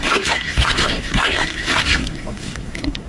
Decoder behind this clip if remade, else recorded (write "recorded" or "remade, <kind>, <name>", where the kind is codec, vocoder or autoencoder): remade, codec, SNAC